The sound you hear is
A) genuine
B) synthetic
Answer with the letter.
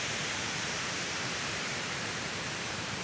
B